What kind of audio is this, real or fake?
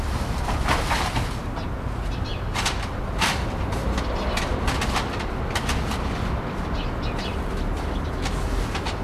real